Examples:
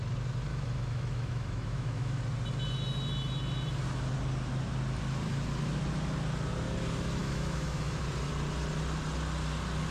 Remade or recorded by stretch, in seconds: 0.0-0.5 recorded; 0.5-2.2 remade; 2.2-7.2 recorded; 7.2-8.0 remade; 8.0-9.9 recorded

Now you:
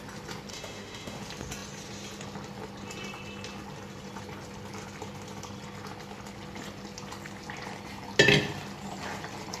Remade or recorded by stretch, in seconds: 0.0-0.5 recorded; 0.5-1.2 remade; 1.2-9.6 recorded

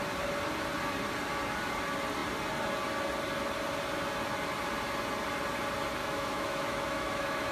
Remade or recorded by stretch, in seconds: 0.0-6.0 recorded; 6.0-7.5 remade

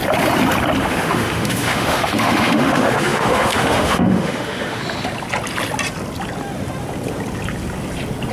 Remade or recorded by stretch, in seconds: 0.0-0.8 recorded; 0.8-4.8 remade; 4.8-8.3 recorded